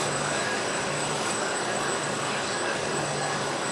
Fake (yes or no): yes